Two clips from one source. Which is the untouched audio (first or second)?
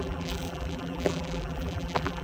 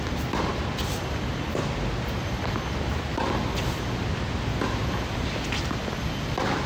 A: second